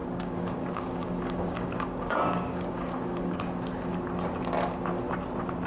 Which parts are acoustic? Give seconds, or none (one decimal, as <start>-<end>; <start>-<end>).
3.4-5.7